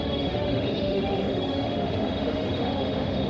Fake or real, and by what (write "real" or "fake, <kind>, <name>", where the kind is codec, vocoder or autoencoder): fake, autoencoder, DAC-VAE